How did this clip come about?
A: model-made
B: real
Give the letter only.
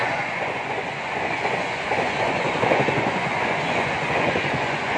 A